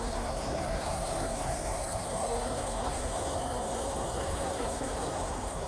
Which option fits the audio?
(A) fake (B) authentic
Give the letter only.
A